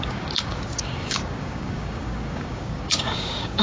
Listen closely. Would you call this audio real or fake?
fake